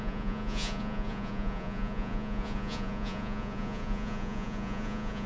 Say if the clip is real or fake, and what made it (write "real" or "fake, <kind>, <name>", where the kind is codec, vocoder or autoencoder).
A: fake, vocoder, Vocos